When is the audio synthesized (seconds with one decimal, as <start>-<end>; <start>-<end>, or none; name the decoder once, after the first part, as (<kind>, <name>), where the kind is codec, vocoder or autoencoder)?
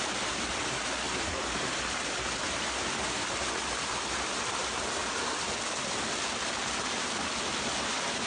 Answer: none